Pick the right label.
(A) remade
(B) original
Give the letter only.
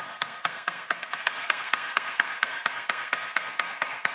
A